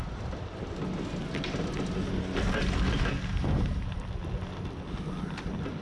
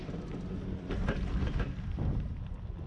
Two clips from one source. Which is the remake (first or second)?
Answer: second